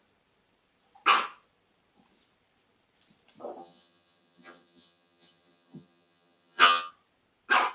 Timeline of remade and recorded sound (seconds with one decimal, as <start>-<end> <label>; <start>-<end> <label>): 0.0-3.6 recorded; 3.6-6.9 remade; 6.9-7.7 recorded